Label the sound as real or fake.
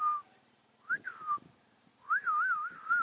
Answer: fake